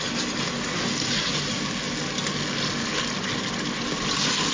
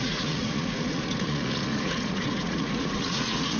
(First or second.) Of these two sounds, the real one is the first